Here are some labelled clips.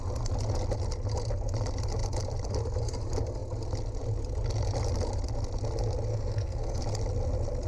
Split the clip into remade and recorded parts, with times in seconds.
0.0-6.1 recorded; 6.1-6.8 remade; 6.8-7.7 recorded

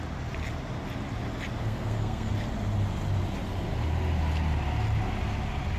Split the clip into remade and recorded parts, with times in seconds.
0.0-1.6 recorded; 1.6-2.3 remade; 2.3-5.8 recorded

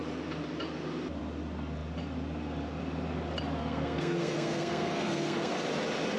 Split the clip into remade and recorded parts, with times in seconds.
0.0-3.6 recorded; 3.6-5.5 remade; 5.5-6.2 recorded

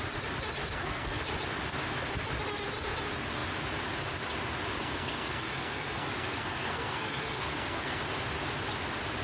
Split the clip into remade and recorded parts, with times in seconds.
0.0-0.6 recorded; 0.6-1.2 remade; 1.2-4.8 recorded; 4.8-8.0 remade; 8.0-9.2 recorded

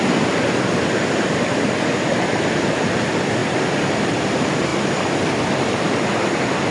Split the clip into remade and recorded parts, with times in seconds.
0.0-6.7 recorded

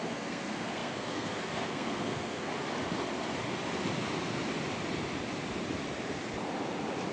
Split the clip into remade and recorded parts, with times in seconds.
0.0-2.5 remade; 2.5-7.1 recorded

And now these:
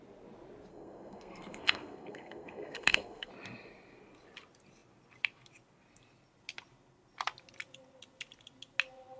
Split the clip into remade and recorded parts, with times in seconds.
0.0-0.7 recorded; 0.7-3.3 remade; 3.3-9.2 recorded

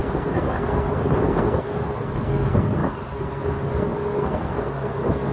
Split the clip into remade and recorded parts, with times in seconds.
0.0-5.3 remade